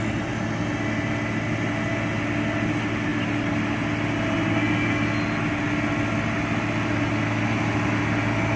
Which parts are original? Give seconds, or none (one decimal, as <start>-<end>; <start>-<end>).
0.0-8.6